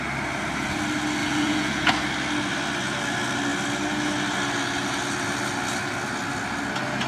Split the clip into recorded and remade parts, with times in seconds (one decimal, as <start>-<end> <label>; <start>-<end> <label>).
0.0-1.2 recorded; 1.2-1.9 remade; 1.9-7.1 recorded